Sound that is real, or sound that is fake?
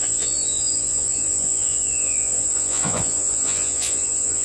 fake